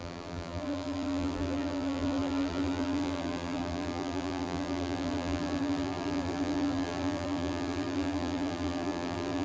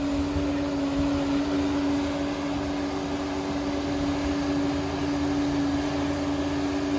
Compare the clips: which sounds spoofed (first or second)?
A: first